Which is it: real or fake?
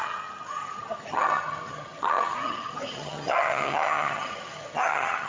fake